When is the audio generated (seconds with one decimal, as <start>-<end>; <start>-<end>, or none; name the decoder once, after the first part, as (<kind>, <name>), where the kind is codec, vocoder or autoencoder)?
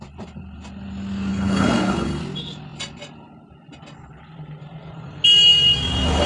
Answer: 1.3-2.2 (codec, HILCodec)